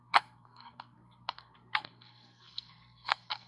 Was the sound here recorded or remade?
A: remade